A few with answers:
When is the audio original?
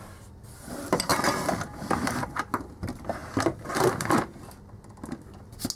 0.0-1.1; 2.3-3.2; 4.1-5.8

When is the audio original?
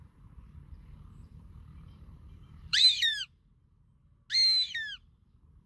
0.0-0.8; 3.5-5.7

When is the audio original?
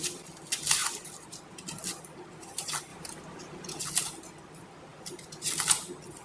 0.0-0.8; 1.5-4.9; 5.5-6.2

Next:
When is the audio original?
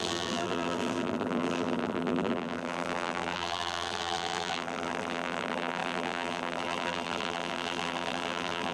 none